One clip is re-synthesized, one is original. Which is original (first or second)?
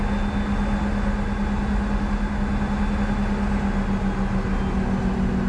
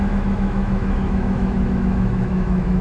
first